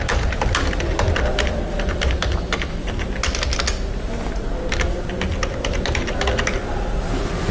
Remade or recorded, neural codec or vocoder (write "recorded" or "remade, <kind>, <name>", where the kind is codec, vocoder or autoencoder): recorded